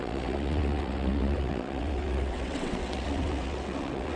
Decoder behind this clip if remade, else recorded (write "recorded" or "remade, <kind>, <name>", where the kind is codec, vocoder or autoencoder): remade, vocoder, WaveNeXt